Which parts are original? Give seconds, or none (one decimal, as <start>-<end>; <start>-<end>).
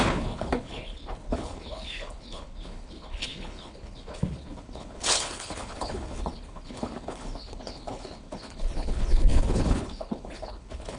none